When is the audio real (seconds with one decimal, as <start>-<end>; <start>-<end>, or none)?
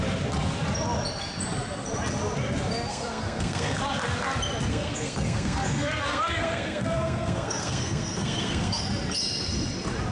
0.0-2.9; 3.8-4.7; 8.8-10.1